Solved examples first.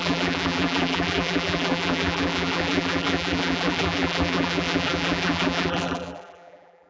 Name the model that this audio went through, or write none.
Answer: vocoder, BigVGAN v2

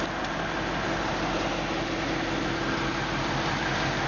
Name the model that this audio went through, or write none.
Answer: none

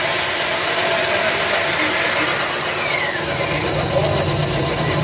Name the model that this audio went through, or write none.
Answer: none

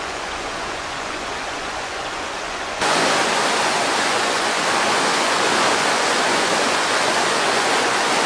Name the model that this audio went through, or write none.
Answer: vocoder, Vocos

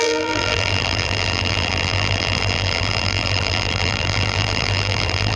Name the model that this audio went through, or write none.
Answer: vocoder, BigVGAN v2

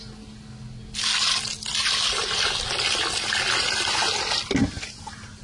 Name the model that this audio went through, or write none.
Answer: none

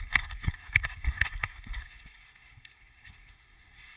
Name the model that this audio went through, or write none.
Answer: codec, SNAC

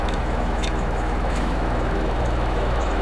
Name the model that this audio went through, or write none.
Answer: autoencoder, DAC-VAE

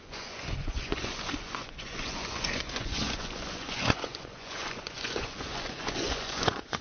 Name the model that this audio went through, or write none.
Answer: vocoder, Vocos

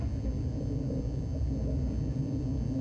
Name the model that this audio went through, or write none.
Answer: none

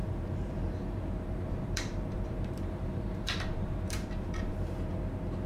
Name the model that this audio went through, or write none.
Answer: vocoder, BigVGAN v2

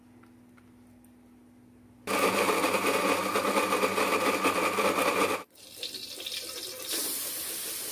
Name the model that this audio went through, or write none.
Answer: none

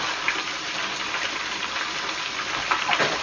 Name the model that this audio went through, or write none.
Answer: none